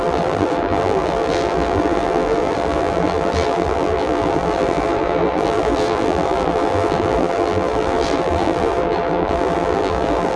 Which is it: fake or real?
fake